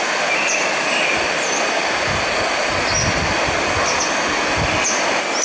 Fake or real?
real